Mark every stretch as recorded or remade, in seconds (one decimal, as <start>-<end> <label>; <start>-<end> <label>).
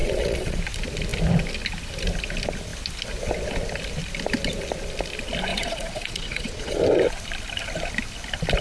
0.0-0.6 remade; 0.6-5.5 recorded; 5.5-6.8 remade; 6.8-8.6 recorded